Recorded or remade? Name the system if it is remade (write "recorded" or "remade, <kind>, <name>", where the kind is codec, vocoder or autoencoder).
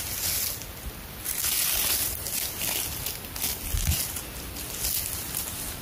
recorded